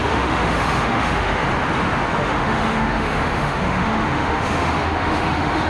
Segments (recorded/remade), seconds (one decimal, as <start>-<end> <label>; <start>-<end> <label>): 0.0-1.4 remade; 1.4-2.1 recorded; 2.1-5.7 remade